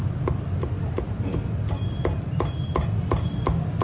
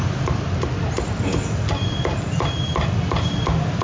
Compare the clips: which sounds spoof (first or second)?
second